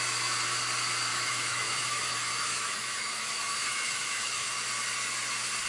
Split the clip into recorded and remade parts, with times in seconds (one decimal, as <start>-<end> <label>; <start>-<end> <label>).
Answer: 0.0-1.1 recorded; 1.1-4.5 remade; 4.5-5.7 recorded